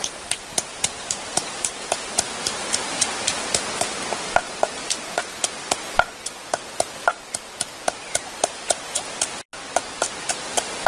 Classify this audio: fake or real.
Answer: real